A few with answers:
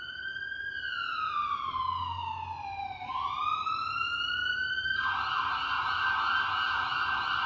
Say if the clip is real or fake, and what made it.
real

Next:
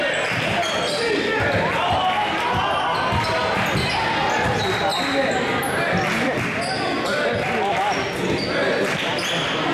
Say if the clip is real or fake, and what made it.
real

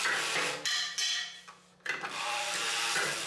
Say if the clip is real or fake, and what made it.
real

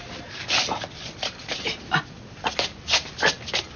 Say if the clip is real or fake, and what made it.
real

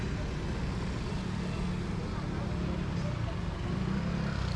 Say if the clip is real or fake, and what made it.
real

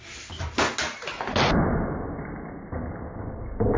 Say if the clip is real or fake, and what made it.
real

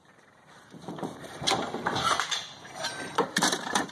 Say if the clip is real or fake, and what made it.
fake, vocoder, BigVGAN v2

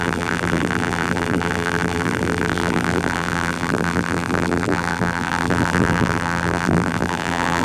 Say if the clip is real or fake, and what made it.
fake, vocoder, BigVGAN v2